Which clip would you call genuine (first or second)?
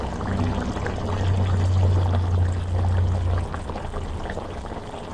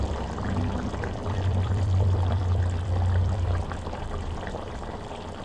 first